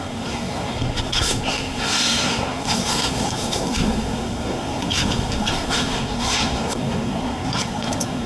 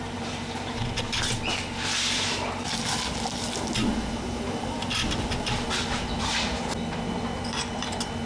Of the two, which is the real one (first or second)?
second